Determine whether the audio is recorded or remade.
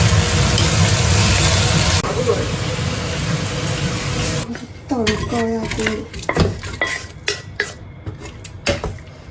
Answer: recorded